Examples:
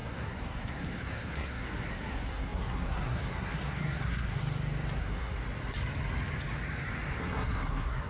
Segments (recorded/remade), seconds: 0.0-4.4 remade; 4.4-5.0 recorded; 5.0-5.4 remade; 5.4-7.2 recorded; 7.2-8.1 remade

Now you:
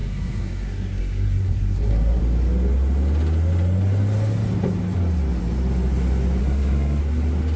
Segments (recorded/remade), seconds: 0.0-2.2 remade; 2.2-6.4 recorded; 6.4-7.0 remade; 7.0-7.6 recorded

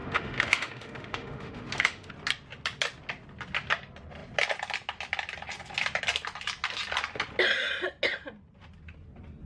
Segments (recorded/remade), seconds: 0.0-2.1 remade; 2.1-9.5 recorded

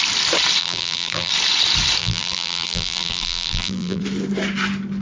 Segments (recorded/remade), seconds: 0.0-0.6 recorded; 0.6-1.3 remade; 1.3-2.0 recorded; 2.0-4.0 remade; 4.0-5.0 recorded

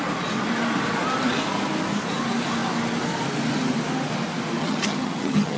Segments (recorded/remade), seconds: 0.0-4.6 recorded; 4.6-5.6 remade